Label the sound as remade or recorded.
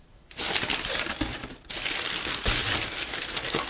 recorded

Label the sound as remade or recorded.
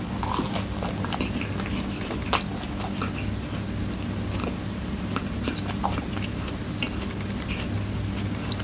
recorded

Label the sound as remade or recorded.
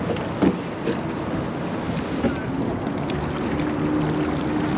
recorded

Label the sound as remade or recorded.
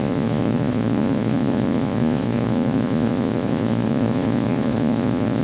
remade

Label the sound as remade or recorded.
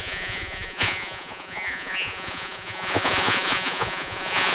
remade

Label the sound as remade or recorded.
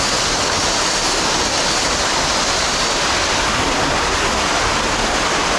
recorded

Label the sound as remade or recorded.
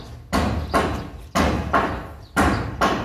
recorded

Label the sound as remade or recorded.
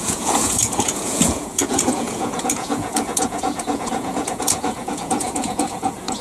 remade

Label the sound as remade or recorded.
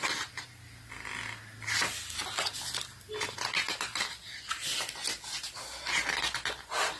recorded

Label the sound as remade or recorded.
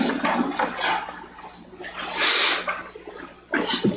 recorded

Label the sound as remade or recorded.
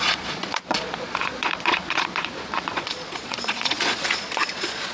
remade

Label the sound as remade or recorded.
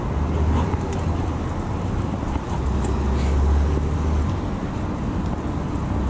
recorded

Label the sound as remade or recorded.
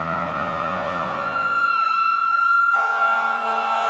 remade